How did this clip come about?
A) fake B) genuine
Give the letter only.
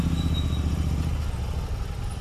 B